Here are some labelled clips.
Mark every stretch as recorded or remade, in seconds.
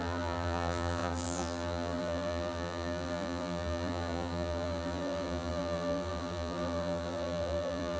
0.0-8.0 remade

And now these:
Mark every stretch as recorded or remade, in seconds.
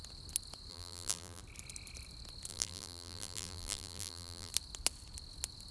0.0-0.7 recorded; 0.7-1.4 remade; 1.4-2.5 recorded; 2.5-4.5 remade; 4.5-5.7 recorded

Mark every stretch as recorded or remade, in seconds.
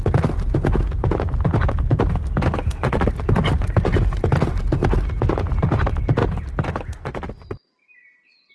0.0-8.5 recorded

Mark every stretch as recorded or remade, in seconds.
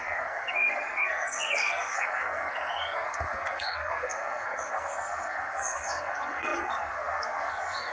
0.0-7.9 remade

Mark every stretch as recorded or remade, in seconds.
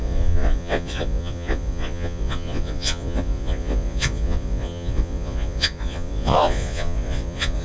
0.0-7.6 remade